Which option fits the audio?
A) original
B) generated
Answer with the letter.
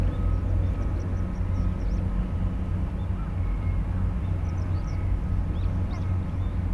A